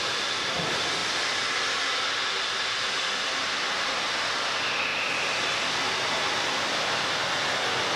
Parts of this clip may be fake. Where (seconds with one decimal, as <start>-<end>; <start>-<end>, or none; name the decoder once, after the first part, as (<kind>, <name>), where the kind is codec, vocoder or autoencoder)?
none